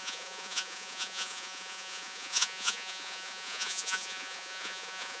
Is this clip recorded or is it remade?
remade